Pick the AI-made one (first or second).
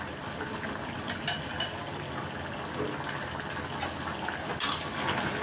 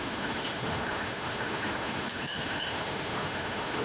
second